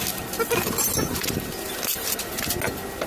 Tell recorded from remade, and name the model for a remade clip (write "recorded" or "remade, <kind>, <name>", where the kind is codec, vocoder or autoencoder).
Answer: recorded